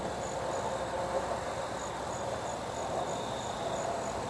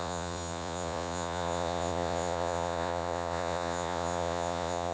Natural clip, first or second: first